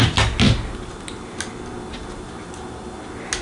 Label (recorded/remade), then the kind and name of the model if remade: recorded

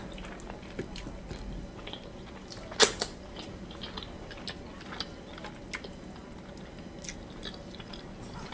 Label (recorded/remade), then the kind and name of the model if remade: recorded